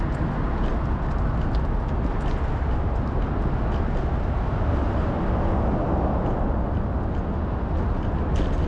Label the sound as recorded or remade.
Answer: recorded